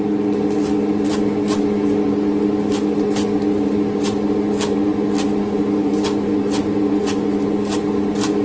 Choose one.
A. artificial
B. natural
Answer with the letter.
B